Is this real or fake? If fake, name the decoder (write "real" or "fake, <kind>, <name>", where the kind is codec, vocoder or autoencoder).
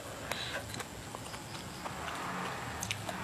real